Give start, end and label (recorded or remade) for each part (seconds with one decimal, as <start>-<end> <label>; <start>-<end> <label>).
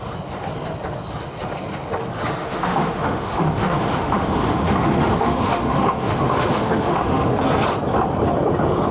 0.0-2.4 recorded; 2.4-7.4 remade; 7.4-8.9 recorded